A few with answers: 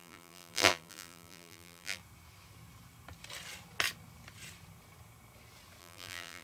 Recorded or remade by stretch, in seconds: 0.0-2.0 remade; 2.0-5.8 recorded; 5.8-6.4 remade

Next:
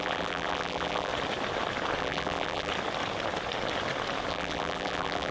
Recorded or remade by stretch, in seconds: 0.0-1.1 remade; 1.1-2.0 recorded; 2.0-2.7 remade; 2.7-4.3 recorded; 4.3-5.3 remade

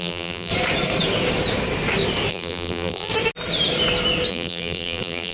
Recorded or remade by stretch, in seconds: 0.0-0.5 remade; 0.5-2.3 recorded; 2.3-3.1 remade; 3.1-4.3 recorded; 4.3-5.3 remade

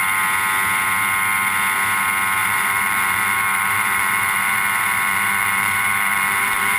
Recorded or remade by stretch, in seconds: 0.0-2.4 recorded; 2.4-6.8 remade

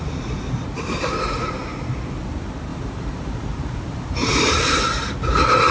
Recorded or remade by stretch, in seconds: 0.0-2.7 recorded; 2.7-4.5 remade; 4.5-5.7 recorded

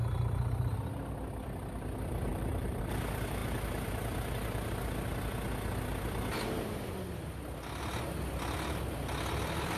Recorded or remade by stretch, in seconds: 0.0-2.3 recorded; 2.3-2.8 remade; 2.8-9.8 recorded

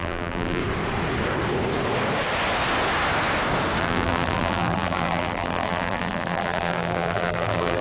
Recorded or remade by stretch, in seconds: 0.0-0.6 remade; 0.6-3.8 recorded; 3.8-7.8 remade

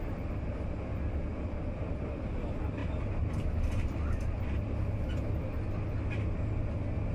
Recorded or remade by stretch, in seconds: 0.0-2.8 recorded; 2.8-5.2 remade; 5.2-7.1 recorded